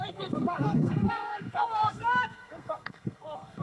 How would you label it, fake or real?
fake